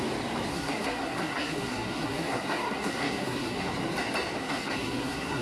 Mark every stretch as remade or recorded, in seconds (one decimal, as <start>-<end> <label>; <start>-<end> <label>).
0.0-0.5 recorded; 0.5-3.7 remade; 3.7-4.4 recorded; 4.4-5.4 remade